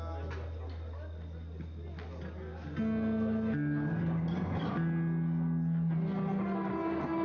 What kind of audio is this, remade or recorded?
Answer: recorded